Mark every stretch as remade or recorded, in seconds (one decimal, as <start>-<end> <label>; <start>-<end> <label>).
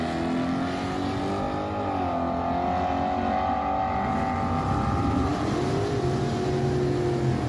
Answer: 0.0-7.5 recorded